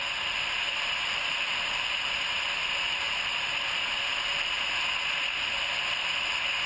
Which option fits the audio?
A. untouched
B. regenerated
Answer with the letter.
A